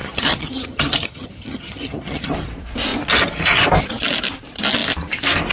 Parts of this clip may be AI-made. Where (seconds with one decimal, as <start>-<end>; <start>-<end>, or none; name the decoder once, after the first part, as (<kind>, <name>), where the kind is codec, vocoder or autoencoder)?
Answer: 0.0-2.3 (vocoder, HiFi-GAN)